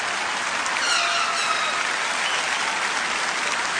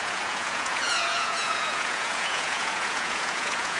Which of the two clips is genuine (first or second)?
first